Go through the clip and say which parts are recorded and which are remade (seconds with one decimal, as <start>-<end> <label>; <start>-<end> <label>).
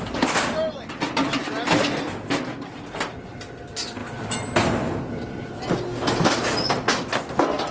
0.0-7.7 recorded